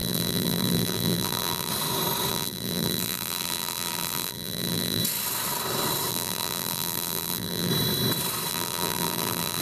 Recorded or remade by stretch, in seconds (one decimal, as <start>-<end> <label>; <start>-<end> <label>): 0.0-1.7 remade; 1.7-2.3 recorded; 2.3-5.0 remade; 5.0-6.1 recorded; 6.1-7.7 remade; 7.7-8.5 recorded; 8.5-9.6 remade